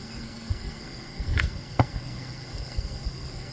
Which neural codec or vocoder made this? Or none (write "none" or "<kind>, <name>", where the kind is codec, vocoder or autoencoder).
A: codec, SNAC